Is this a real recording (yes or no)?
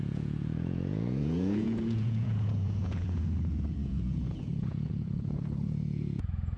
no